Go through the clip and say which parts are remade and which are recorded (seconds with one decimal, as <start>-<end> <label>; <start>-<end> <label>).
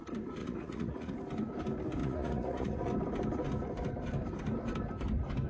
0.0-0.4 recorded; 0.4-1.1 remade; 1.1-2.0 recorded; 2.0-2.9 remade; 2.9-5.5 recorded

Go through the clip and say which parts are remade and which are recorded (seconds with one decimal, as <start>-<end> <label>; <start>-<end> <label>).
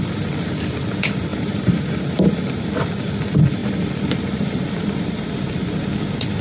0.0-1.3 recorded; 1.3-2.3 remade; 2.3-3.6 recorded; 3.6-5.3 remade; 5.3-6.4 recorded